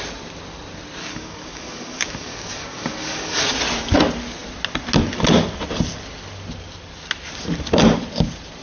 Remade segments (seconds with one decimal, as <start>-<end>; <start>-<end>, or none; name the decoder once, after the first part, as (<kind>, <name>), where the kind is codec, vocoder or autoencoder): 1.0-3.4 (codec, DAC)